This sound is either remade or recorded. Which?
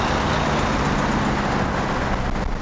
recorded